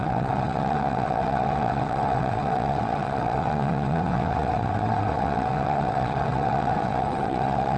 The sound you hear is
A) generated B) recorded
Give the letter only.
A